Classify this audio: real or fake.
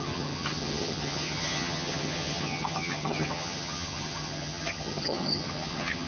fake